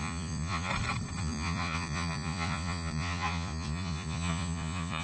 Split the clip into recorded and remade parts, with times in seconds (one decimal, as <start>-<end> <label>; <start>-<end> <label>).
0.0-0.7 remade; 0.7-1.2 recorded; 1.2-5.0 remade

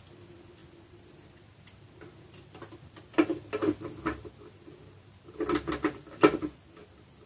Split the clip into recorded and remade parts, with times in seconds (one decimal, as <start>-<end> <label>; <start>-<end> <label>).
0.0-7.3 recorded

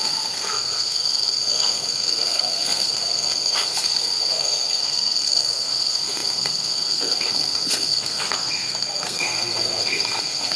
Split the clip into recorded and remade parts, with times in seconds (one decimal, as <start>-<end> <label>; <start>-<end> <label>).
0.0-10.6 remade

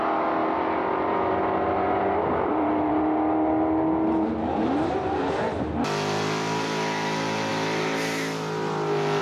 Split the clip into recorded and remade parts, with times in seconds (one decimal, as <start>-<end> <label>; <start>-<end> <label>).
0.0-9.2 recorded

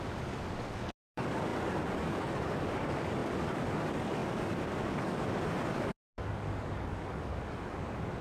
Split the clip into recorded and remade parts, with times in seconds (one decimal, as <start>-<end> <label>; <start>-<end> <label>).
0.0-8.2 remade

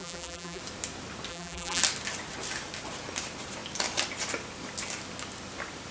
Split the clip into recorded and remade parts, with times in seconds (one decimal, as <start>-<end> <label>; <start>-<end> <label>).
0.0-0.6 remade; 0.6-1.3 recorded; 1.3-1.8 remade; 1.8-5.9 recorded

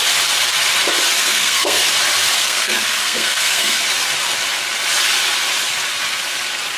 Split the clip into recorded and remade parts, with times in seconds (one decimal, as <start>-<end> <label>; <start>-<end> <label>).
0.0-1.2 recorded; 1.2-1.9 remade; 1.9-2.4 recorded; 2.4-3.8 remade; 3.8-6.8 recorded

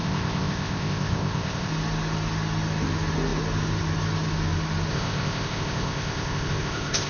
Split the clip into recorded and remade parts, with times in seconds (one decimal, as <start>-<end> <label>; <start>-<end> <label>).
0.0-1.7 remade; 1.7-4.9 recorded; 4.9-7.1 remade